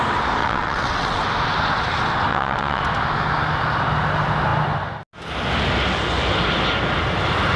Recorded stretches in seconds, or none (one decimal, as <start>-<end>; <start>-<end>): 0.0-0.4; 1.2-2.3; 2.8-7.6